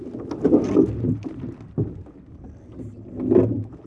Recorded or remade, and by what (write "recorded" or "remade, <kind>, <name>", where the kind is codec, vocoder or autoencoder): recorded